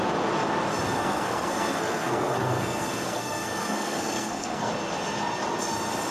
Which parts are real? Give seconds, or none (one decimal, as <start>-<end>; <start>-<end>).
0.0-1.0; 4.7-6.1